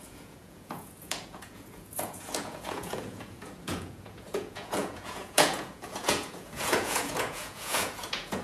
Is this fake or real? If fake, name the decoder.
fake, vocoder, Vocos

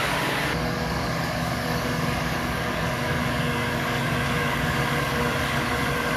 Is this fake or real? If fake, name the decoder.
fake, codec, DAC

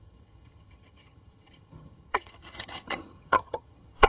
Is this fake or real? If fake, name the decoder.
fake, vocoder, HiFi-GAN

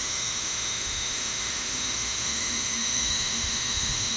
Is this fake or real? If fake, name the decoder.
fake, autoencoder, DAC-VAE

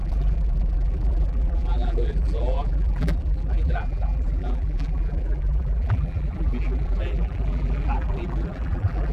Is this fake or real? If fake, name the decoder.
fake, vocoder, BigVGAN v2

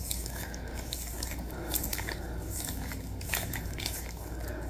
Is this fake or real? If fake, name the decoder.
fake, codec, DAC